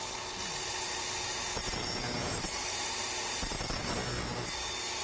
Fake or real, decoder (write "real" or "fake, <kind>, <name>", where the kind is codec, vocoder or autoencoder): real